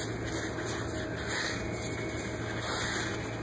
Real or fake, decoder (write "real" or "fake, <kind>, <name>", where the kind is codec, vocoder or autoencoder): real